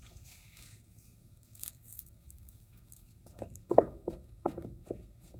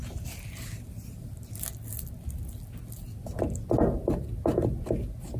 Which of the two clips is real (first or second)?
second